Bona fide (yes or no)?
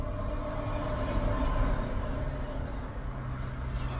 yes